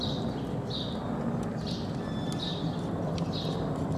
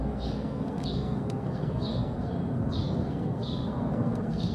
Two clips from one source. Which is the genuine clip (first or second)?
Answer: first